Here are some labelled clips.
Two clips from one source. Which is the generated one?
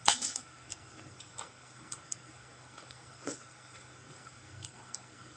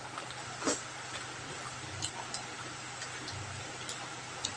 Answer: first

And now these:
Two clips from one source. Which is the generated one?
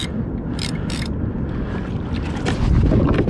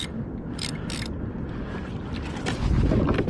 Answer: first